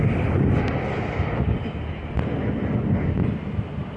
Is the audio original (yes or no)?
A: yes